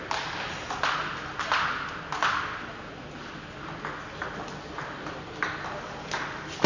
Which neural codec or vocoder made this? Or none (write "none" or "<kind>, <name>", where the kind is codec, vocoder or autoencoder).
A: none